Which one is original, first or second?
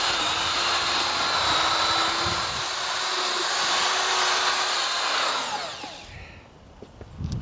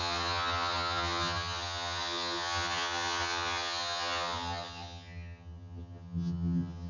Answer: first